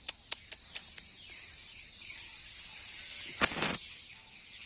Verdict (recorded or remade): recorded